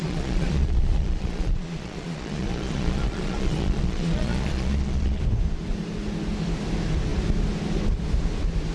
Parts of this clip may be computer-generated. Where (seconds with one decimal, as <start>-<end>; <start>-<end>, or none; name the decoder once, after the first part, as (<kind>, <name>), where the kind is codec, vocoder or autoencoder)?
0.0-5.2 (vocoder, Vocos)